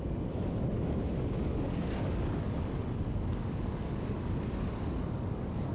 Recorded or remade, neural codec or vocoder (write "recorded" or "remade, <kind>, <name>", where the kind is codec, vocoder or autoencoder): remade, codec, DAC